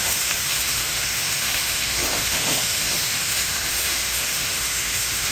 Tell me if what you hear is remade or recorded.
remade